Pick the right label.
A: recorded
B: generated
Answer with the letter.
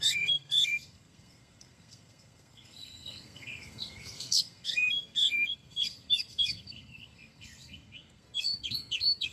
B